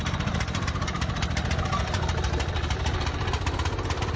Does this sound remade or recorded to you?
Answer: remade